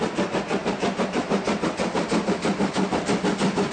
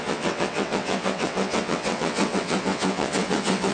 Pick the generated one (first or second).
second